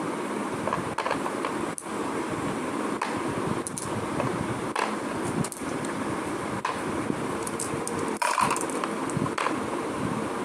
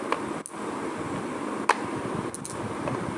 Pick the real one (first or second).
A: second